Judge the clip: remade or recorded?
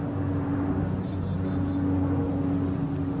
recorded